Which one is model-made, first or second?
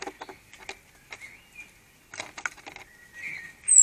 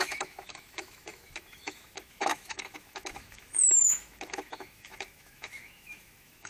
second